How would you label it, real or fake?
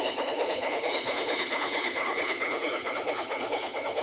fake